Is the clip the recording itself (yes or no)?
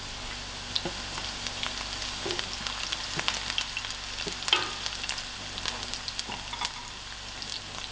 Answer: yes